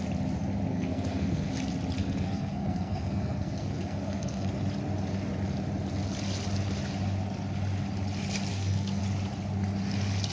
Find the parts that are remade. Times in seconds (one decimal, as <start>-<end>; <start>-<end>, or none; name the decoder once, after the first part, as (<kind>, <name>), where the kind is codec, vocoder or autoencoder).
0.7-1.5 (codec, SNAC); 2.0-4.5; 8.5-9.0